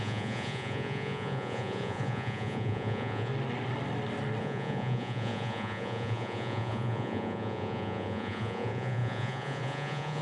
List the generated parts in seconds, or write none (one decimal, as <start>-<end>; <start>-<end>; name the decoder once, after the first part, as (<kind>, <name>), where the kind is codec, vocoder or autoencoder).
0.0-3.3 (vocoder, Vocos); 4.4-10.2